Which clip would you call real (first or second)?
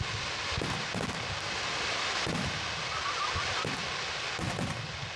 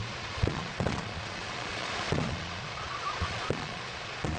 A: first